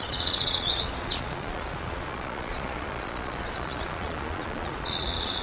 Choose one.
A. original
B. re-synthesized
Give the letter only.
B